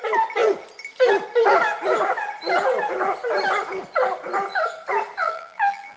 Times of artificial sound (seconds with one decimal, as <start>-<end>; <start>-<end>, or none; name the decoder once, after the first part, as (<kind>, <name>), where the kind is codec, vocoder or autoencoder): 5.2-6.0 (vocoder, BigVGAN v2)